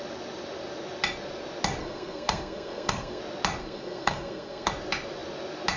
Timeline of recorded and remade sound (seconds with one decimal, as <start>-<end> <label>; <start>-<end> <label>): 0.0-1.8 recorded; 1.8-3.2 remade; 3.2-3.6 recorded; 3.6-4.7 remade; 4.7-5.8 recorded